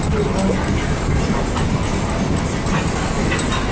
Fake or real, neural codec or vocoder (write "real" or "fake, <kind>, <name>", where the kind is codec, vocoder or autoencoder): real